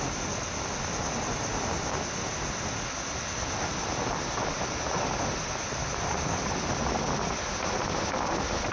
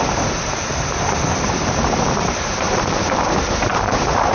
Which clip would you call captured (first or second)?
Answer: first